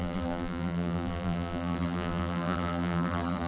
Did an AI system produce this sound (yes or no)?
yes